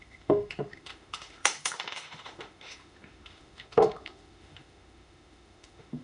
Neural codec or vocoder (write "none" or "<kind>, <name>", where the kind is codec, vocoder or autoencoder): autoencoder, DAC-VAE